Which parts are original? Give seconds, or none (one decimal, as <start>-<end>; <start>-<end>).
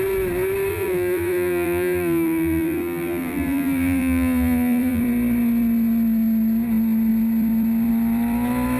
0.0-0.7; 5.0-8.8